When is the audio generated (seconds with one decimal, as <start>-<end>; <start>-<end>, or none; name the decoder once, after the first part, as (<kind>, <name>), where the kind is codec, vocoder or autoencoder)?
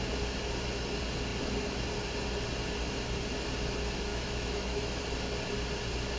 4.1-5.0 (autoencoder, DAC-VAE)